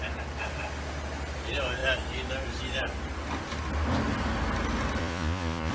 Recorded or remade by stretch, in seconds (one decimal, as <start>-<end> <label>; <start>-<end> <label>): 0.0-5.0 recorded; 5.0-5.7 remade